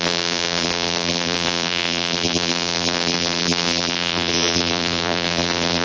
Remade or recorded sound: remade